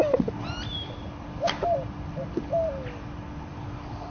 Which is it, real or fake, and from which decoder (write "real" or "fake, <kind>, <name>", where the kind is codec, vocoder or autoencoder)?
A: real